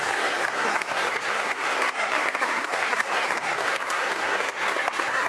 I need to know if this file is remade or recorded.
remade